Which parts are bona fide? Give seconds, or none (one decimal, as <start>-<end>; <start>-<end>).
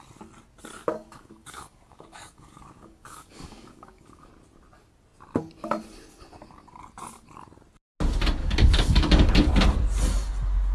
0.0-0.8; 4.3-8.4; 9.5-10.7